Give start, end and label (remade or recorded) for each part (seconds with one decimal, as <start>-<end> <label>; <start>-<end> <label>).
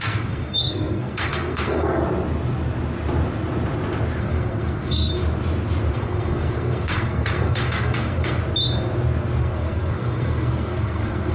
0.0-2.0 remade; 2.0-4.2 recorded; 4.2-5.1 remade; 5.1-5.9 recorded; 5.9-8.4 remade; 8.4-9.4 recorded; 9.4-11.3 remade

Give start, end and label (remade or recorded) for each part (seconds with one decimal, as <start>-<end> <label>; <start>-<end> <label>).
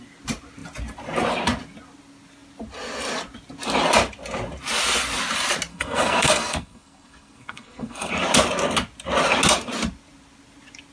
0.0-5.7 recorded; 5.7-8.1 remade; 8.1-10.9 recorded